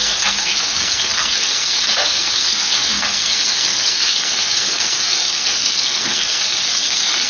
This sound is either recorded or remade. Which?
remade